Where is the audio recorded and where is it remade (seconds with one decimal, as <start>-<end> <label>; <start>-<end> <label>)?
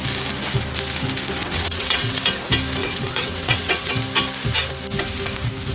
0.0-1.4 recorded; 1.4-2.2 remade; 2.2-2.8 recorded; 2.8-3.9 remade; 3.9-5.7 recorded